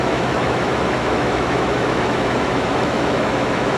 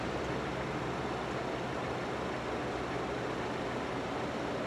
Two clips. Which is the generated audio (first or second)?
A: first